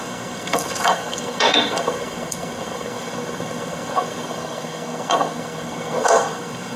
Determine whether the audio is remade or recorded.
remade